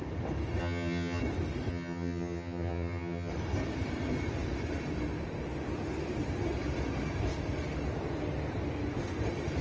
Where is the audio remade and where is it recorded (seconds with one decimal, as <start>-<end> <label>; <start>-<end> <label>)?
0.0-0.6 recorded; 0.6-1.2 remade; 1.2-1.7 recorded; 1.7-3.3 remade; 3.3-9.6 recorded